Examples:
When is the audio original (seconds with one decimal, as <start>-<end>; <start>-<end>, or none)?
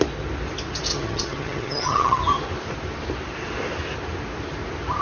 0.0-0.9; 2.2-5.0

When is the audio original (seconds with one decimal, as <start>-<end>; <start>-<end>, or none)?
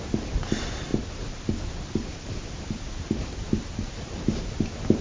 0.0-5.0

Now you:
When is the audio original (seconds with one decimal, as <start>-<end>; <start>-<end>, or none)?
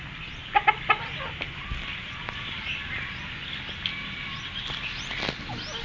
0.0-5.8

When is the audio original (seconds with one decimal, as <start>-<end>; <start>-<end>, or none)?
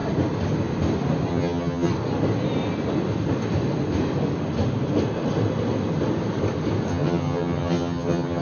0.0-1.3; 1.9-6.9